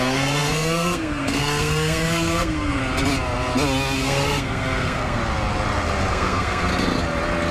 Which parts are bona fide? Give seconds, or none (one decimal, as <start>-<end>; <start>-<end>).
2.8-4.0; 5.2-6.1; 6.7-7.5